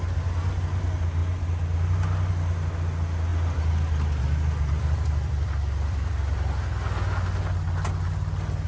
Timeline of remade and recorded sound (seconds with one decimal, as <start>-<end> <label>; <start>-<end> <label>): 0.0-8.7 recorded